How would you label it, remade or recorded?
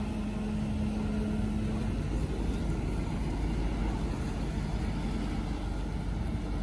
recorded